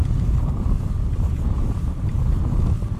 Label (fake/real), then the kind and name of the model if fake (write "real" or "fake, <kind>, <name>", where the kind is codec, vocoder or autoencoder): fake, vocoder, BigVGAN v2